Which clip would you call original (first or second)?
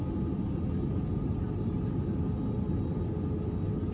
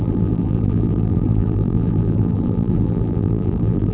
first